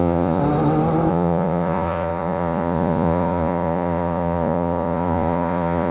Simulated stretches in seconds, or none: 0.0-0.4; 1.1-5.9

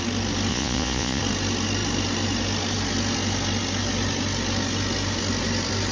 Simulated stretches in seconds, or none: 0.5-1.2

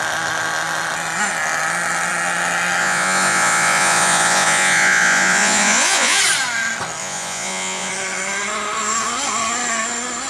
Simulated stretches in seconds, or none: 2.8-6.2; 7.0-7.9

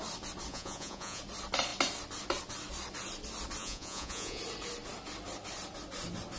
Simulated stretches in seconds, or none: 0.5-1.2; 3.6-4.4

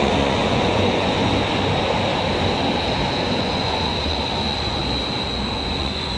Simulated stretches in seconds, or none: 0.0-1.3; 3.4-4.8; 5.5-6.2

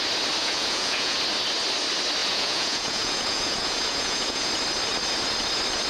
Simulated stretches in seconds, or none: 0.4-1.2; 2.2-4.5

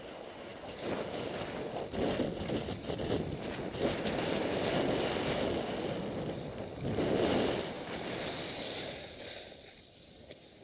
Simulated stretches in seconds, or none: none